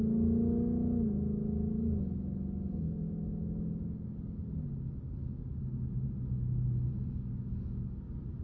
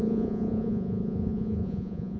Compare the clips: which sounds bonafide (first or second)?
first